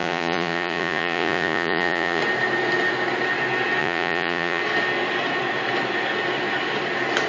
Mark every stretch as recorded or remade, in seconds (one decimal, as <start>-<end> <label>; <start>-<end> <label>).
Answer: 0.0-2.2 remade; 2.2-3.8 recorded; 3.8-4.6 remade; 4.6-7.3 recorded